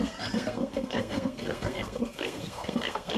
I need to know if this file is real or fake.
fake